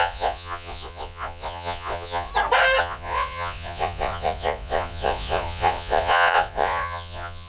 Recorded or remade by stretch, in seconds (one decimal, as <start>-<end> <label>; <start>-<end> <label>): 0.0-2.3 remade; 2.3-2.8 recorded; 2.8-7.5 remade